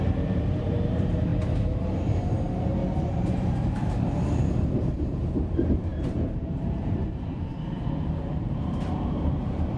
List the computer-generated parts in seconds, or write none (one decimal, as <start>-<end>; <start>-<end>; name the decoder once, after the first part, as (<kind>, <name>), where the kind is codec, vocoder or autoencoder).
0.0-2.8 (vocoder, BigVGAN v2); 3.3-7.5; 8.1-9.8